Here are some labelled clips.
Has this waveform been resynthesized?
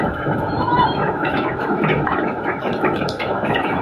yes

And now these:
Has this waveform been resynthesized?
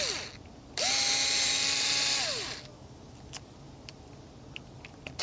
no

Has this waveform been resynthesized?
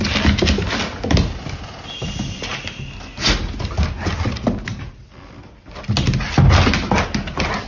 no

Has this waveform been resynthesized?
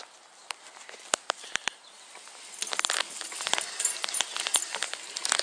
no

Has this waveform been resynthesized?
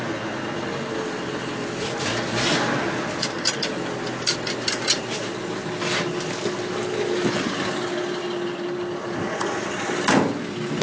no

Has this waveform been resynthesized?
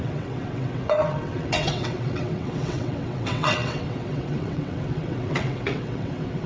yes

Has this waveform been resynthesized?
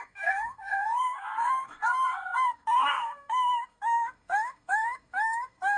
yes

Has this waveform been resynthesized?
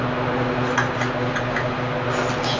no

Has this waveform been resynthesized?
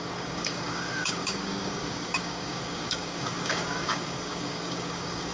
yes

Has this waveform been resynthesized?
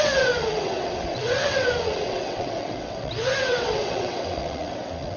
yes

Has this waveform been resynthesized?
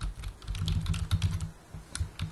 no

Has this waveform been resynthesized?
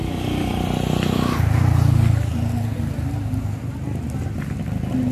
no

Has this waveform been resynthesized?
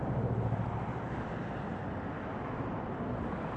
no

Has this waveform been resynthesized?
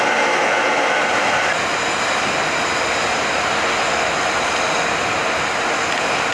no